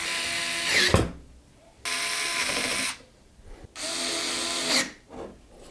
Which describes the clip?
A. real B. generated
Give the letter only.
A